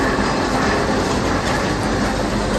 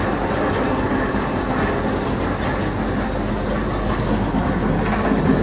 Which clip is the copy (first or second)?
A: first